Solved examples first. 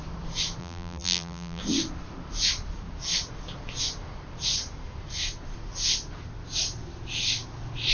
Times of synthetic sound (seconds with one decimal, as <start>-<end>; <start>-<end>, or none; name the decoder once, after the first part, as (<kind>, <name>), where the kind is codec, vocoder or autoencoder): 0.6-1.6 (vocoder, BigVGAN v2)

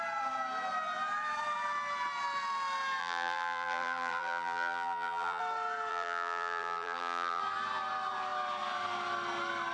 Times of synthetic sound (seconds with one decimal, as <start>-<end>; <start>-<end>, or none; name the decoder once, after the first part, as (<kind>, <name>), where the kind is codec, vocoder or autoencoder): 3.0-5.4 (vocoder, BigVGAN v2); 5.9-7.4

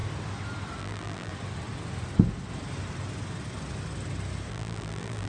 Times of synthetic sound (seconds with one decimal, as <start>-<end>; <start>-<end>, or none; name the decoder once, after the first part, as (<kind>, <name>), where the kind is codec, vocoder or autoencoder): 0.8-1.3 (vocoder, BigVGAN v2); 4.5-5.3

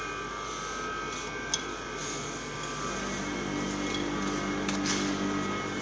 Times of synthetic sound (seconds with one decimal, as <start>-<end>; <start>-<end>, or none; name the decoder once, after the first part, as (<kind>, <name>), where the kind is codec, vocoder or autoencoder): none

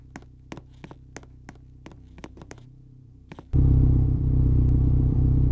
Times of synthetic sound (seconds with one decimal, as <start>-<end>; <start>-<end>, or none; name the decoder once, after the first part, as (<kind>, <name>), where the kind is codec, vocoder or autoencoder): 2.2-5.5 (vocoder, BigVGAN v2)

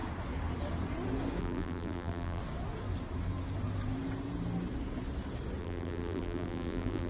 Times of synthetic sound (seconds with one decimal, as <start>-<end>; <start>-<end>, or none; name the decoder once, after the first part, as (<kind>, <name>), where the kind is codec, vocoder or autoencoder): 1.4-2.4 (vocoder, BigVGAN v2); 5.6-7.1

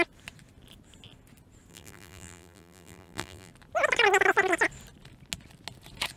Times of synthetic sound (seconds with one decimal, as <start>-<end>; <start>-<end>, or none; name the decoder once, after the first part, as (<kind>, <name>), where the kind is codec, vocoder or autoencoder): 1.7-3.5 (vocoder, BigVGAN v2)

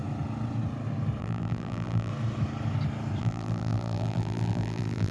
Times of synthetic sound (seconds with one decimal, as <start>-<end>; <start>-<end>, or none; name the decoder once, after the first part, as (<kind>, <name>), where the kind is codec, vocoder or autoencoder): 1.2-2.1 (vocoder, BigVGAN v2); 3.2-5.1